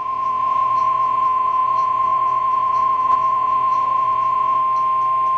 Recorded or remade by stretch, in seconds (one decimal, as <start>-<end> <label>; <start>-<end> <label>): 0.0-4.6 remade; 4.6-5.4 recorded